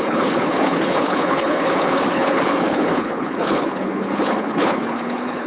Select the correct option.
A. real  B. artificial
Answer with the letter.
B